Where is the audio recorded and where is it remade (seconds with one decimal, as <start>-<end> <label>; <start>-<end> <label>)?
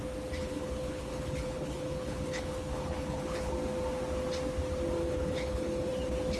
0.0-0.4 recorded; 0.4-3.5 remade; 3.5-5.0 recorded; 5.0-5.9 remade; 5.9-6.4 recorded